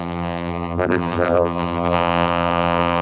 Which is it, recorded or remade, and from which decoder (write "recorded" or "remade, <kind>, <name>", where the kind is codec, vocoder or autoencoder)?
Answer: remade, vocoder, BigVGAN v2